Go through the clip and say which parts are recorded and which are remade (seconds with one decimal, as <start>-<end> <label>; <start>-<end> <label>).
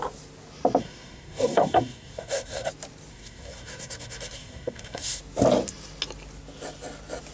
0.0-0.8 recorded; 0.8-2.7 remade; 2.7-3.1 recorded; 3.1-5.2 remade; 5.2-7.3 recorded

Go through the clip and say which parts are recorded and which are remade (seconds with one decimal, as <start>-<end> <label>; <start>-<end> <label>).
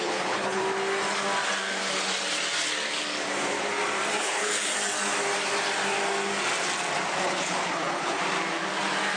0.0-0.6 remade; 0.6-4.2 recorded; 4.2-4.7 remade; 4.7-7.2 recorded; 7.2-8.2 remade; 8.2-9.2 recorded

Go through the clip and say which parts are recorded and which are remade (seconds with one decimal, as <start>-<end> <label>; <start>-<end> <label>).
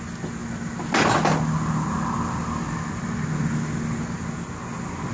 0.0-5.1 recorded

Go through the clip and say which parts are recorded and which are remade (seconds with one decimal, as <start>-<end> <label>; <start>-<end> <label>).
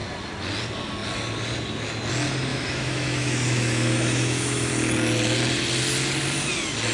0.0-2.5 recorded; 2.5-4.7 remade; 4.7-6.9 recorded